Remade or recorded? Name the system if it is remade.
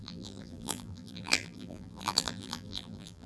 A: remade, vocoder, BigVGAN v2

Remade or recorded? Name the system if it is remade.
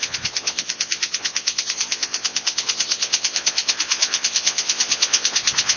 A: remade, vocoder, Vocos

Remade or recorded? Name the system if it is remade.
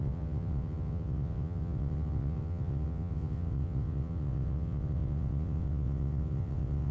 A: remade, vocoder, WaveNeXt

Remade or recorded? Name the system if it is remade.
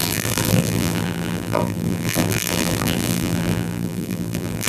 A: remade, vocoder, BigVGAN v2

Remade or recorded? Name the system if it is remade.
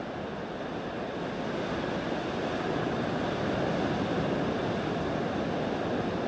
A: recorded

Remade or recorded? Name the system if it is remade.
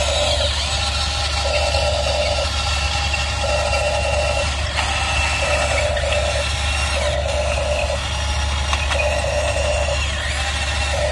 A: recorded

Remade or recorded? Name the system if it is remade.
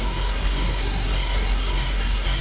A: remade, codec, SNAC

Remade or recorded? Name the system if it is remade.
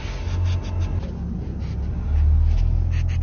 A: recorded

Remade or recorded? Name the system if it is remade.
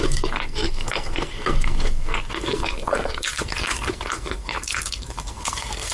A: remade, codec, SNAC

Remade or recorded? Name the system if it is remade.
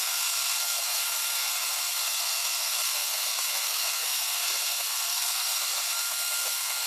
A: remade, codec, SNAC